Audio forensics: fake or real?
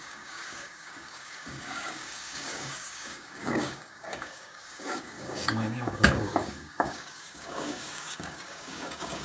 fake